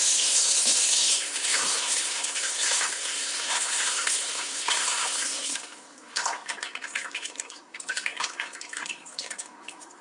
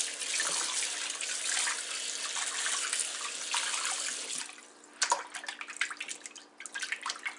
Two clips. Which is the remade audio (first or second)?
first